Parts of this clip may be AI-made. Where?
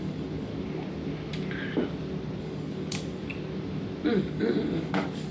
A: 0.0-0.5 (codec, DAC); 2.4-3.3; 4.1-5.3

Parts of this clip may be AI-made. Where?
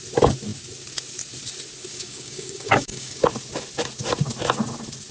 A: 1.9-3.2 (codec, DAC)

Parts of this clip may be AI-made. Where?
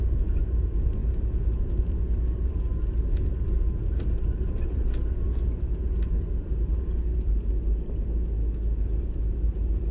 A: none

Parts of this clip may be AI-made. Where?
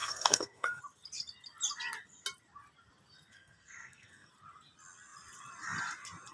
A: 0.0-0.8 (codec, SNAC); 3.3-4.3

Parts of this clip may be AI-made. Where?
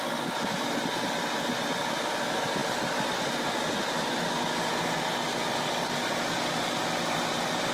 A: none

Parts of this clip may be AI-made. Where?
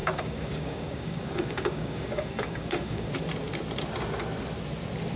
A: 0.0-3.1 (codec, DAC)